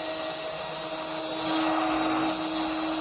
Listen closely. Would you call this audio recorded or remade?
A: recorded